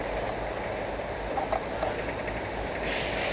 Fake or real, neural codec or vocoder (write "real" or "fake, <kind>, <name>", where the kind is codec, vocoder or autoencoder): real